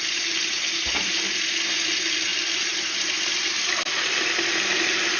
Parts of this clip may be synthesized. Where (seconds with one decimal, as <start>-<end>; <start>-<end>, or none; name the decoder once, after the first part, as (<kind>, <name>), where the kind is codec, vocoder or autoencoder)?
none